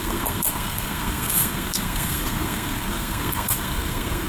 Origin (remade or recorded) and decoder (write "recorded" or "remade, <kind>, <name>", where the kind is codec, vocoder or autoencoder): remade, codec, SNAC